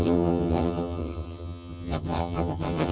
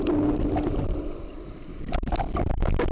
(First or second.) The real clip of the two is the second